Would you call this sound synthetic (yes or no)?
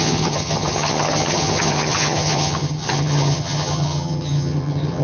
yes